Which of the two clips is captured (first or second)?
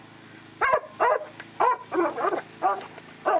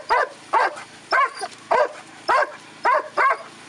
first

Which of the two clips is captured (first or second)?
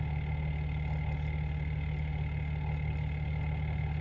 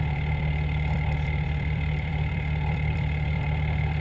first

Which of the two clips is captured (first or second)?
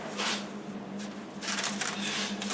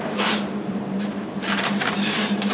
first